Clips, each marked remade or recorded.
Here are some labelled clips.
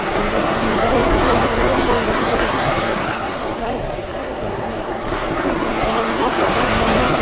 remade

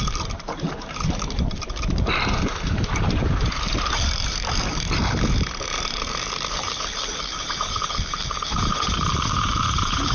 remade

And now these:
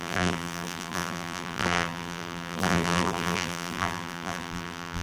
remade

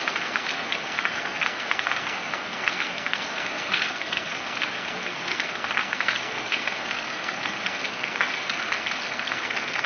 remade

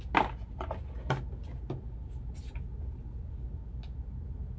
recorded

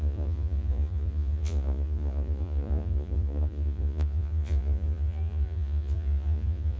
remade